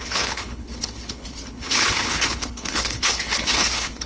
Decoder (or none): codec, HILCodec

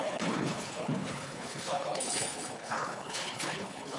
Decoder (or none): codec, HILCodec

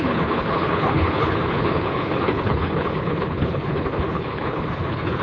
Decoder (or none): codec, HILCodec